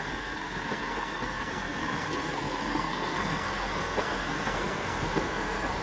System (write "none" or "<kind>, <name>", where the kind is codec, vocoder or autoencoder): codec, SNAC